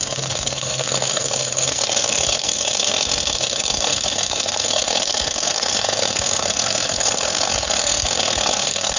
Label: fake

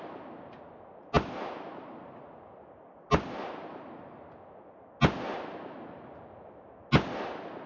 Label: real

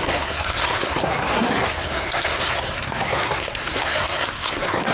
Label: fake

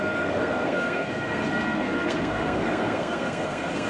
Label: fake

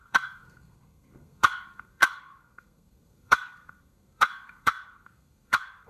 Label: fake